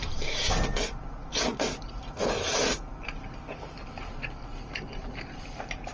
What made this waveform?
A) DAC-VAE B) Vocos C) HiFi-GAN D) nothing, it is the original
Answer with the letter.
D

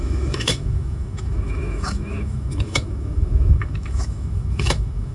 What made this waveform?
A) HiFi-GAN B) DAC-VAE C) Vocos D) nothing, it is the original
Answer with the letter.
B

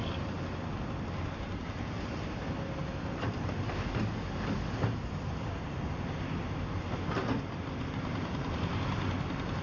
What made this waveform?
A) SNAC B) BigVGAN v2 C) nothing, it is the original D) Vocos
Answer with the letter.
C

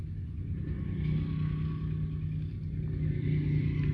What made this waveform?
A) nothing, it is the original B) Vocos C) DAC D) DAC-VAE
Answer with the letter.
A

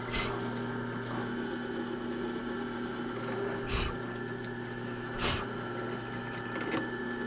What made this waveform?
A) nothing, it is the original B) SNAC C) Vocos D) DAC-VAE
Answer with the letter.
A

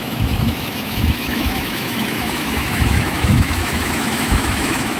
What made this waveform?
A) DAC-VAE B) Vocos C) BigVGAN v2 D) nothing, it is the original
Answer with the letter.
A